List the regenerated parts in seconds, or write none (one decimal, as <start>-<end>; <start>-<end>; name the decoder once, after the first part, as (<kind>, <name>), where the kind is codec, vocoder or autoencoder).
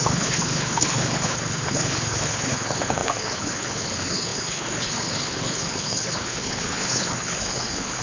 0.0-8.0 (codec, HILCodec)